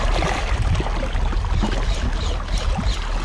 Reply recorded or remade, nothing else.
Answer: recorded